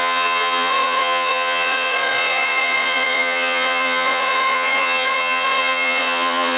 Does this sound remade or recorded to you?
remade